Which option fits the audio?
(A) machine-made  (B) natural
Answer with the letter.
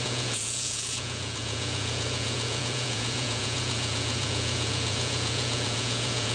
A